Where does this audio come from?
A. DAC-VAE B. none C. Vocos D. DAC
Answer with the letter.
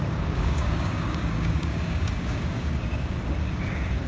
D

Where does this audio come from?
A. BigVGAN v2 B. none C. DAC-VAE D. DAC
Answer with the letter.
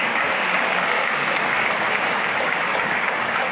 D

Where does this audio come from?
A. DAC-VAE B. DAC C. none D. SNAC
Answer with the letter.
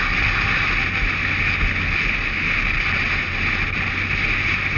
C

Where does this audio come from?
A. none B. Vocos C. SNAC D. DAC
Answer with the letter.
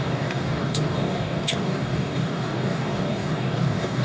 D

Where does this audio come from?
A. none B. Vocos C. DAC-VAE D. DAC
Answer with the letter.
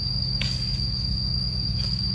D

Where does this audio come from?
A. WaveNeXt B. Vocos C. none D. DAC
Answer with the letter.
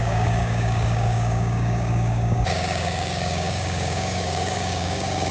D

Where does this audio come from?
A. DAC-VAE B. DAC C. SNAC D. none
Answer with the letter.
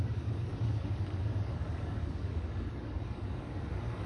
B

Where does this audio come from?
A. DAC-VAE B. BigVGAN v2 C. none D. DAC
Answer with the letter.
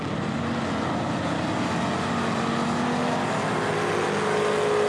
C